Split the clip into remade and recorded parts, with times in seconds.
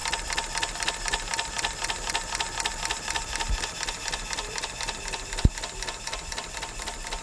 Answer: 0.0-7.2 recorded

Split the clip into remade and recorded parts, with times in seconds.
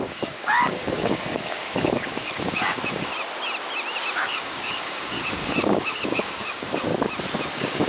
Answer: 0.0-3.1 remade; 3.1-4.2 recorded; 4.2-6.9 remade; 6.9-7.5 recorded; 7.5-7.9 remade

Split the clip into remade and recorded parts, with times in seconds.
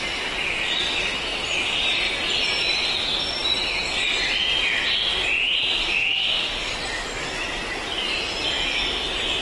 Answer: 0.0-5.8 recorded; 5.8-6.7 remade; 6.7-9.4 recorded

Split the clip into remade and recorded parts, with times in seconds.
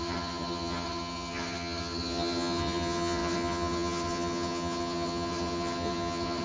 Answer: 0.0-6.4 remade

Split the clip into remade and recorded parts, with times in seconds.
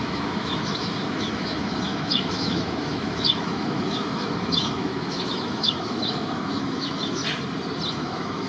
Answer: 0.0-7.2 remade; 7.2-7.9 recorded; 7.9-8.5 remade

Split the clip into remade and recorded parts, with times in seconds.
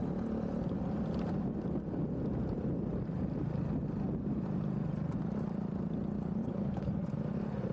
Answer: 0.0-6.4 recorded; 6.4-6.9 remade; 6.9-7.7 recorded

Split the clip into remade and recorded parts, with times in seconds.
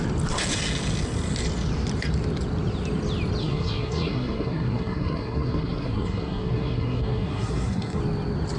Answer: 0.0-3.4 recorded; 3.4-8.0 remade; 8.0-8.6 recorded